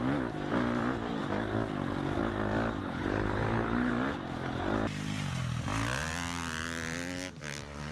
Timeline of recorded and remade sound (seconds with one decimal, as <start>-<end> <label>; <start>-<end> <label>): 0.0-2.8 recorded; 2.8-3.9 remade; 3.9-7.9 recorded